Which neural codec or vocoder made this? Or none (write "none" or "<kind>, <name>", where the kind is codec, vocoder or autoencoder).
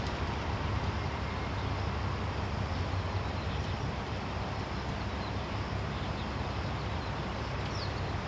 none